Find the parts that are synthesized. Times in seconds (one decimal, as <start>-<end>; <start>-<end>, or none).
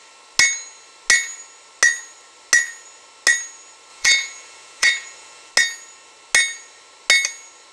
3.9-5.5